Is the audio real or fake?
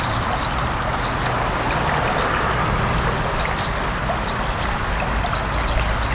real